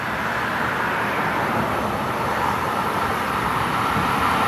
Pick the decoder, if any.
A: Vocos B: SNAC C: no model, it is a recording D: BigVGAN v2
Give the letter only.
D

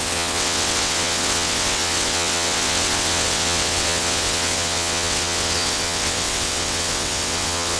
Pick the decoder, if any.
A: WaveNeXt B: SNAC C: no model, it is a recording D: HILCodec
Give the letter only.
A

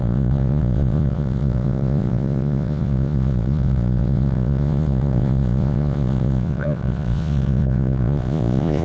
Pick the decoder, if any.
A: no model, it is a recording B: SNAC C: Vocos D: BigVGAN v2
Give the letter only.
C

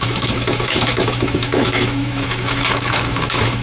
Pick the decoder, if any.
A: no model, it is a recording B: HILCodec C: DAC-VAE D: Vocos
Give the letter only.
C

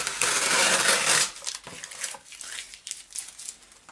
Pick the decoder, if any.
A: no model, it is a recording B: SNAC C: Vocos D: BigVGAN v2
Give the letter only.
A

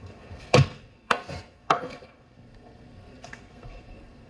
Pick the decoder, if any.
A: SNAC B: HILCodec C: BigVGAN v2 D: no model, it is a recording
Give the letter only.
A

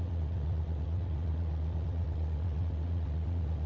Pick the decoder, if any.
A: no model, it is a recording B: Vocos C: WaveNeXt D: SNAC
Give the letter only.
C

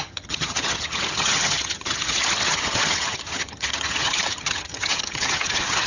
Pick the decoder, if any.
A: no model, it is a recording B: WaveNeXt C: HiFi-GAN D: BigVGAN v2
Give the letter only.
C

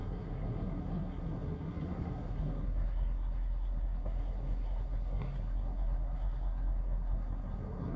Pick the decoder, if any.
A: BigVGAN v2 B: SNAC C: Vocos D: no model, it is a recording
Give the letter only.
B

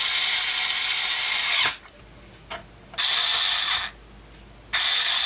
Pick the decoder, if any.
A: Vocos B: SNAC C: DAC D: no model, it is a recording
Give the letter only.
D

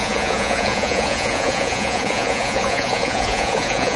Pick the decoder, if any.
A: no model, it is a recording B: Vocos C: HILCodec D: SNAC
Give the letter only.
B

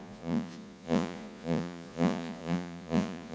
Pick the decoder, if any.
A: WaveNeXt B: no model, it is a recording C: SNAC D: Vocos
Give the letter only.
D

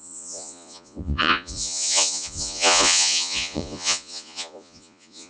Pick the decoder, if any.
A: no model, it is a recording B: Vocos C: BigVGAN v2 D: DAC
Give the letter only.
B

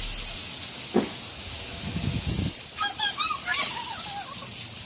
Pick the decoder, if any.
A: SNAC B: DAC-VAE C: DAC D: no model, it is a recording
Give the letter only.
D